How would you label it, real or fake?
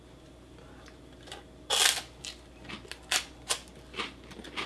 real